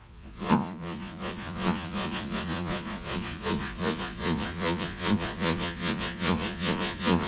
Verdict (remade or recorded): remade